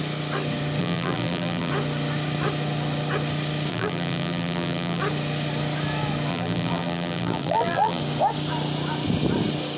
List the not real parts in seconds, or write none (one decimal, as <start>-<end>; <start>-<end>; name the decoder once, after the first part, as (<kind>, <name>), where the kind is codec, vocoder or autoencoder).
0.8-1.7 (vocoder, BigVGAN v2); 3.7-5.0; 6.3-8.0